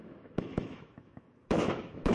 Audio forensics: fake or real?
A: fake